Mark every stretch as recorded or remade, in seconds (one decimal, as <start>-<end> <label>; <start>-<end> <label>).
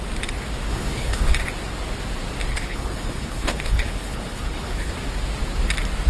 0.0-0.7 recorded; 0.7-1.3 remade; 1.3-2.5 recorded; 2.5-4.9 remade; 4.9-6.1 recorded